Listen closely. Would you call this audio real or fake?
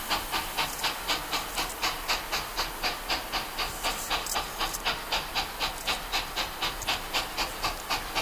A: real